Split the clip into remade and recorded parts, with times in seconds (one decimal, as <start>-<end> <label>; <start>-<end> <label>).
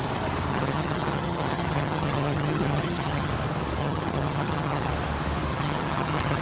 0.0-0.5 recorded; 0.5-3.3 remade; 3.3-3.8 recorded; 3.8-4.9 remade; 4.9-5.5 recorded; 5.5-6.4 remade